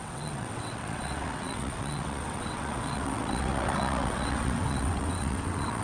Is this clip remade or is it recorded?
remade